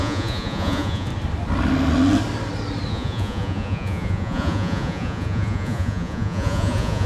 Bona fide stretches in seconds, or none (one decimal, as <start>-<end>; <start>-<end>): 1.1-2.9